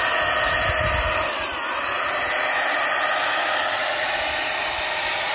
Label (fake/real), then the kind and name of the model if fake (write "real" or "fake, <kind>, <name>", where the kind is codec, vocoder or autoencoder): real